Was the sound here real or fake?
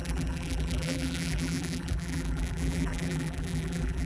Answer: fake